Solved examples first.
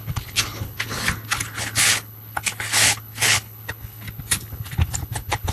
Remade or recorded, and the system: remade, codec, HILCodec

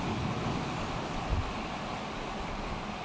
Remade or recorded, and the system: recorded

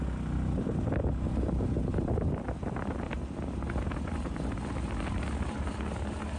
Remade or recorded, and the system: recorded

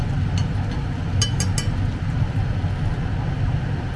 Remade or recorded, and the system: recorded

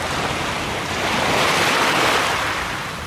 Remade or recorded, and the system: recorded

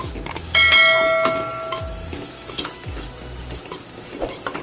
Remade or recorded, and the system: recorded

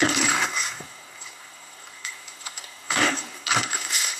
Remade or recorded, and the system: remade, codec, SNAC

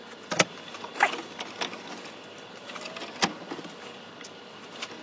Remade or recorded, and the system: recorded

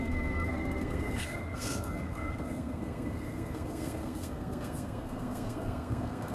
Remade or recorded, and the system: remade, codec, SNAC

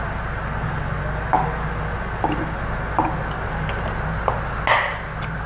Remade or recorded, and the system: recorded